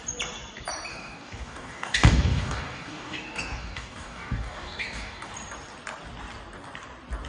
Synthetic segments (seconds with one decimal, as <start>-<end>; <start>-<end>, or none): 0.9-5.3